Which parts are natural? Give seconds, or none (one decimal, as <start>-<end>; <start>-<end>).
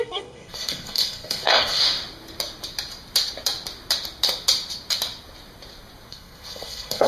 1.8-6.1